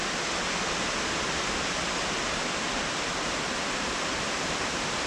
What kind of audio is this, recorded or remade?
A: recorded